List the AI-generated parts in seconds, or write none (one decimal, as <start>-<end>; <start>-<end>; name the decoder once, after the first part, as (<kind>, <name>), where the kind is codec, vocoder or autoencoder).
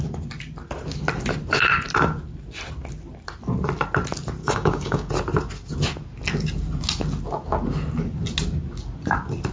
4.4-5.1 (codec, DAC)